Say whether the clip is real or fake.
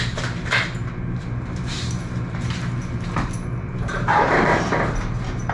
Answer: fake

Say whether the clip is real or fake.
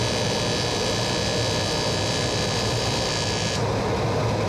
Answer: real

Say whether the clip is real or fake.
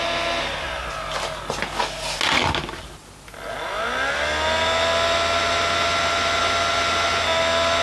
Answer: real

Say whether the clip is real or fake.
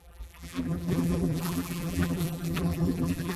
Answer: fake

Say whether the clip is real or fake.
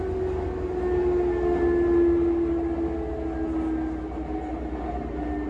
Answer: real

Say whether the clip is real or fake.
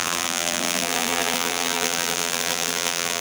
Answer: fake